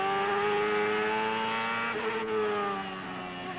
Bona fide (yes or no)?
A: yes